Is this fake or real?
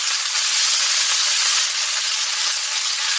fake